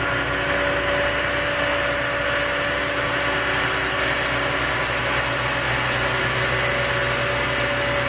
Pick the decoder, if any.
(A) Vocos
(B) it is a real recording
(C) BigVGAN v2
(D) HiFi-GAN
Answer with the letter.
B